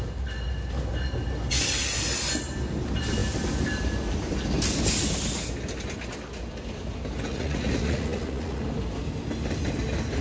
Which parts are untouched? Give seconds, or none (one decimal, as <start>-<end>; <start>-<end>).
0.0-7.3; 8.6-10.2